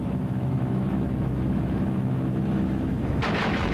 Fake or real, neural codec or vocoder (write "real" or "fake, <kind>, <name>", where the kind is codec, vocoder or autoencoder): fake, autoencoder, DAC-VAE